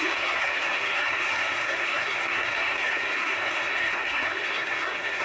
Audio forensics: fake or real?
fake